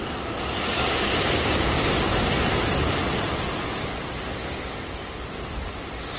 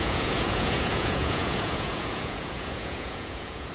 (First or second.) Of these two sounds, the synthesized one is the second